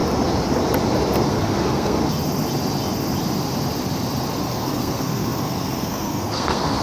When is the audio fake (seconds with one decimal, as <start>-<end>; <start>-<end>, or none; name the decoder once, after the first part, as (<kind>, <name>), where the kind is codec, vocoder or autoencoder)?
1.3-2.0 (codec, SNAC); 4.5-6.8